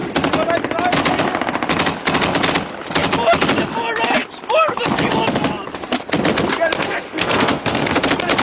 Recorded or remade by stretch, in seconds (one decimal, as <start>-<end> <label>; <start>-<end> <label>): 0.0-6.8 recorded; 6.8-8.0 remade; 8.0-8.4 recorded